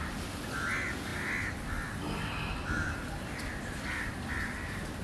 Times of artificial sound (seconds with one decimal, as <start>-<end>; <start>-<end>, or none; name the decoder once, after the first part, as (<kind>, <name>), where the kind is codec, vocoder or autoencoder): none